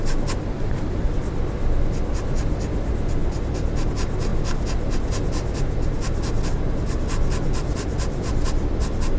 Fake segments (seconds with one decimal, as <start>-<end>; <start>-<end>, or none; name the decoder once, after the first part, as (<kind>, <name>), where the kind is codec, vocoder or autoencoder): none